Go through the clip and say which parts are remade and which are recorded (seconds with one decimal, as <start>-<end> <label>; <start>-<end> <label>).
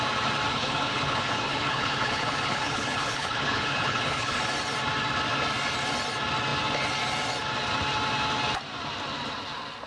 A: 0.0-0.5 recorded; 0.5-4.4 remade; 4.4-9.9 recorded